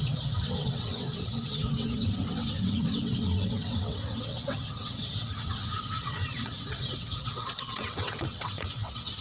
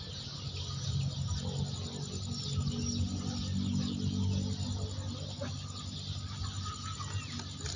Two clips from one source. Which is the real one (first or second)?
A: second